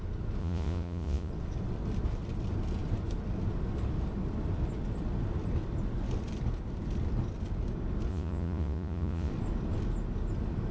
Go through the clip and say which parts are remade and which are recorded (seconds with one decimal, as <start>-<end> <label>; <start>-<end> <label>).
0.0-0.4 recorded; 0.4-1.3 remade; 1.3-8.1 recorded; 8.1-9.3 remade; 9.3-10.7 recorded